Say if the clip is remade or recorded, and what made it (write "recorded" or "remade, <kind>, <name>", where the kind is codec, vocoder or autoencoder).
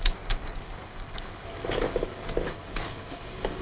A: remade, codec, DAC